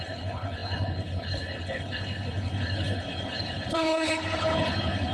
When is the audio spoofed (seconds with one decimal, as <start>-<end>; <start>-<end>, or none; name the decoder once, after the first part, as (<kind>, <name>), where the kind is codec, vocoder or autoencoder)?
0.0-5.1 (codec, HILCodec)